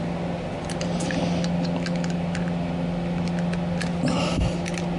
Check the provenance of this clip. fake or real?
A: real